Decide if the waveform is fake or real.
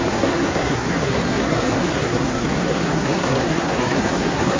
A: fake